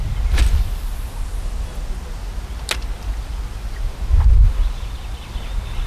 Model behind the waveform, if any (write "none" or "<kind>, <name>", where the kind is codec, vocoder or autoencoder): none